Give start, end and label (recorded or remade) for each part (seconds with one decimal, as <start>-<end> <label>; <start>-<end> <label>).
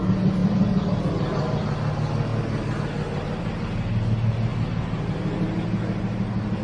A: 0.0-6.6 recorded